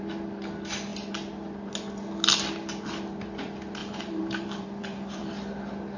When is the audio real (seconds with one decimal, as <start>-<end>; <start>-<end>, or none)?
0.0-3.8; 5.3-6.0